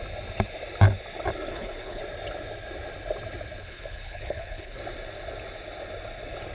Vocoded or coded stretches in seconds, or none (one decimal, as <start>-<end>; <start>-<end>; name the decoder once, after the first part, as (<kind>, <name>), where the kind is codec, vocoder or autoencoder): 1.5-2.0 (codec, HILCodec); 3.6-4.8